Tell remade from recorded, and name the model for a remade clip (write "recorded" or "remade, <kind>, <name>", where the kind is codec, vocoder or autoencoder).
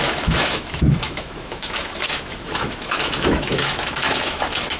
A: remade, autoencoder, DAC-VAE